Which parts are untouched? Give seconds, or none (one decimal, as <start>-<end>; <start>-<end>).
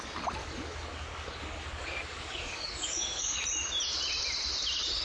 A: 0.0-0.4; 3.4-5.0